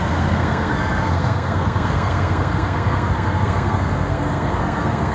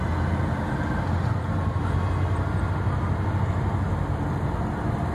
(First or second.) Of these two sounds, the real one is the second